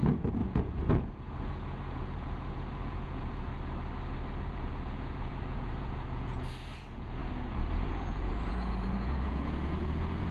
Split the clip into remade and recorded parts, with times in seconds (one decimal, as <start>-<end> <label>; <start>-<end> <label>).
0.0-3.5 remade; 3.5-4.4 recorded; 4.4-10.3 remade